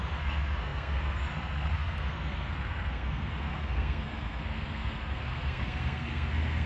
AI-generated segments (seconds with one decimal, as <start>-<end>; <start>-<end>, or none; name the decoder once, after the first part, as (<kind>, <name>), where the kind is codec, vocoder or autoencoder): 0.0-6.7 (codec, SNAC)

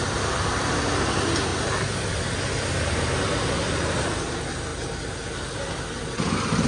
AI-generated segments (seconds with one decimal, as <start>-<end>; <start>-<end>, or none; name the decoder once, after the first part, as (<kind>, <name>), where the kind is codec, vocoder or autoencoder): none

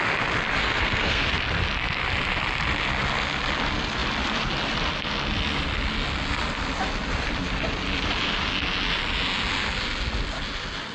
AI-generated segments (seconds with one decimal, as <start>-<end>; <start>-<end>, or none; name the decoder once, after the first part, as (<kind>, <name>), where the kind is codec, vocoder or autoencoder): 0.6-1.3 (codec, SNAC)

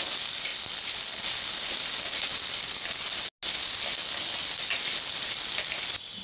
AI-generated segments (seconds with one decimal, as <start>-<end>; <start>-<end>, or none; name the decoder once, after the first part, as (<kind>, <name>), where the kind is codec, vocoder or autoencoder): none

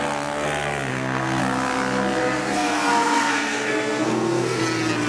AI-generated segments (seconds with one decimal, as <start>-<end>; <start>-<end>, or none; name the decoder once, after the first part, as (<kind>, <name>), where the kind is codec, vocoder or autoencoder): 0.9-1.4 (codec, SNAC); 2.4-4.6

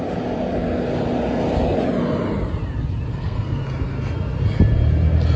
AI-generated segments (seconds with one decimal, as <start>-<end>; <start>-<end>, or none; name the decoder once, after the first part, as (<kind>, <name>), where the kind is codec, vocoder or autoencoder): 3.1-3.6 (codec, SNAC)

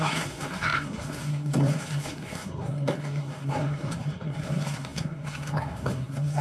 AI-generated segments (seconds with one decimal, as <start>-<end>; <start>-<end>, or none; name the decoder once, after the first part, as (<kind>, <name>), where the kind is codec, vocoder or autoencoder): 0.0-6.4 (codec, SNAC)

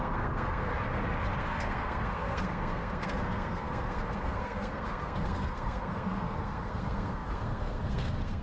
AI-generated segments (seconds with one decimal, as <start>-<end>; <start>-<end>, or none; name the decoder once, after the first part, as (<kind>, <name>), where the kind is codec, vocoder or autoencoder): 0.0-0.7 (codec, SNAC); 1.4-8.4